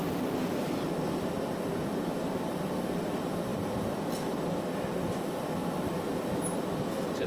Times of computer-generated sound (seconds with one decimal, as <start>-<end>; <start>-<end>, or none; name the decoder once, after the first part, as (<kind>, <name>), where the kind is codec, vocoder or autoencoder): 1.9-3.0 (vocoder, BigVGAN v2)